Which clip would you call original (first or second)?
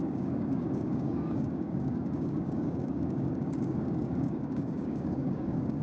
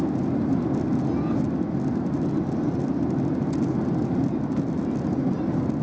second